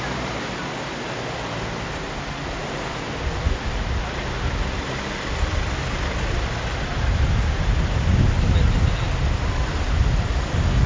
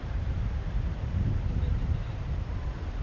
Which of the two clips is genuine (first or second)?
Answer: first